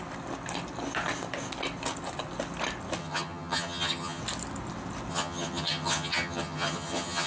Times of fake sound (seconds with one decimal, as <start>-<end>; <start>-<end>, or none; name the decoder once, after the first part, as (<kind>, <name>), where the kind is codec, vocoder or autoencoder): 3.0-4.2 (vocoder, HiFi-GAN); 5.1-7.3